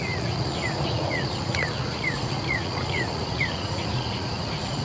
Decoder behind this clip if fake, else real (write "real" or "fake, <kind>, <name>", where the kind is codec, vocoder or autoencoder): fake, vocoder, Vocos